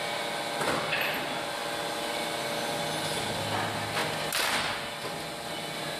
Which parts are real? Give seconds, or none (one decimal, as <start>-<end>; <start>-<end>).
0.0-6.0